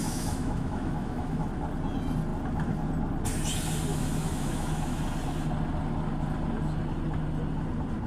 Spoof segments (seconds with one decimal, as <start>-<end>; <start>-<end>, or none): 0.0-1.5; 3.9-5.0